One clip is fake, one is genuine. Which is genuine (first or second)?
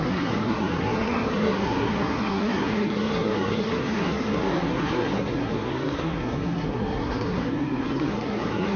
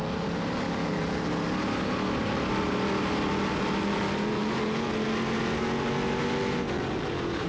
second